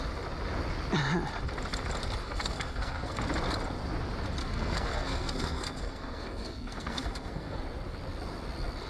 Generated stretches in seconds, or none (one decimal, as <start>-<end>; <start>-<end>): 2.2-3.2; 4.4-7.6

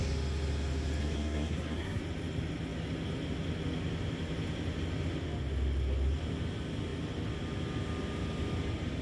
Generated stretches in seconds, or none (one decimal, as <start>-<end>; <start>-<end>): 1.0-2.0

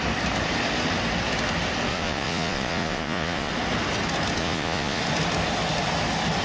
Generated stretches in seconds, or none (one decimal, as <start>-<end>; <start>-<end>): 1.9-3.5; 4.4-5.0

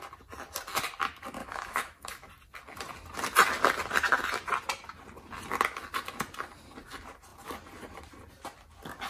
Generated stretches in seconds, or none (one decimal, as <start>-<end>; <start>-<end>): 1.4-2.3

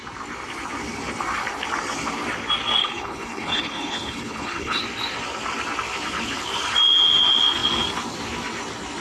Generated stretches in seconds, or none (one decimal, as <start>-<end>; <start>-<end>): 2.8-4.8

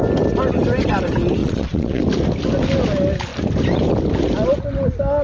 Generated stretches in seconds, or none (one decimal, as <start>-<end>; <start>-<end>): 1.4-2.0